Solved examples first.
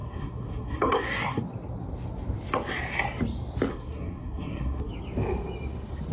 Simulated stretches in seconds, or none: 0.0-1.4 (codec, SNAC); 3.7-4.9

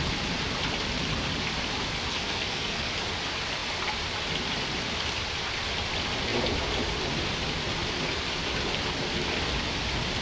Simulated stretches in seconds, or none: 2.1-2.9 (codec, SNAC)

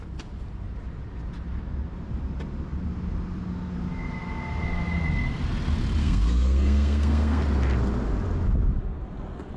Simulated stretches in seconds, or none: 6.0-7.4 (codec, SNAC)

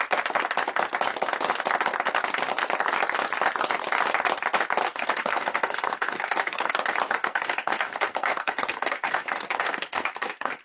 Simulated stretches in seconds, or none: 4.8-6.7 (codec, SNAC); 7.2-10.6

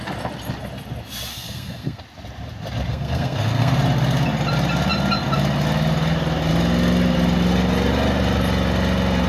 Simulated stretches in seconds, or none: 1.3-2.0 (codec, SNAC); 2.9-3.8

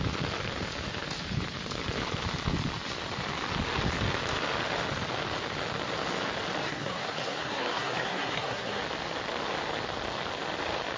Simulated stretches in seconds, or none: 6.6-8.8 (codec, SNAC)